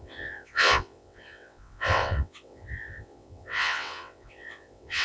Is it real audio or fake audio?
fake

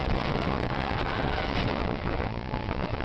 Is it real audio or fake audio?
fake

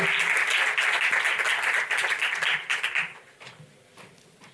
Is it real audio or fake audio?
real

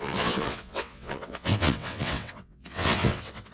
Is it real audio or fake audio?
fake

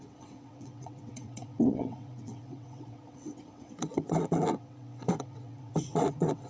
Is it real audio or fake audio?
fake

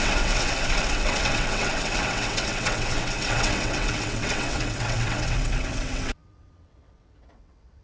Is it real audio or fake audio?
fake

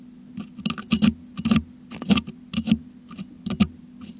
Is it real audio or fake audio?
real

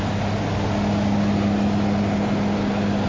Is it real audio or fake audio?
real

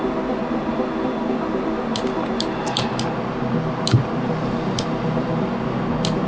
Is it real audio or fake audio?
real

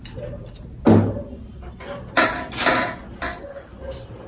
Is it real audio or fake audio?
real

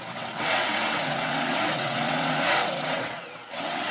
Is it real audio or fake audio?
fake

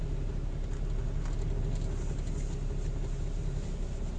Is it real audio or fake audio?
real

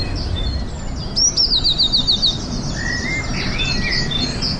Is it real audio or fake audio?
real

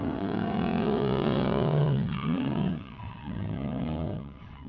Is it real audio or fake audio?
fake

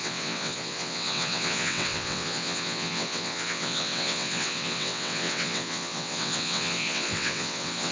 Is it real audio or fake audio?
fake